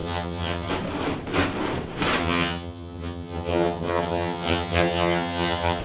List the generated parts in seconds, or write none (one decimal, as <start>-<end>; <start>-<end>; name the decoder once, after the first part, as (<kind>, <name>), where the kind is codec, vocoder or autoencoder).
0.0-0.7 (vocoder, HiFi-GAN); 2.2-5.8